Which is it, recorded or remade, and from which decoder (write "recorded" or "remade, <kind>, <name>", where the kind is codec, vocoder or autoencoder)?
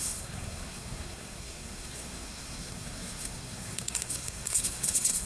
remade, codec, SNAC